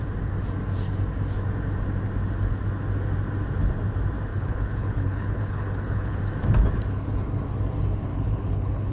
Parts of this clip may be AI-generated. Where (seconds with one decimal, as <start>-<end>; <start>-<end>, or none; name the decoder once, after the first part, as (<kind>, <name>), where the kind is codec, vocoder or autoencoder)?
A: 4.3-6.2 (codec, HILCodec); 8.1-8.9